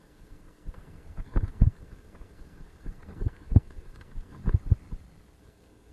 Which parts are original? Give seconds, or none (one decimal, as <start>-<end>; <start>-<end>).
4.4-5.4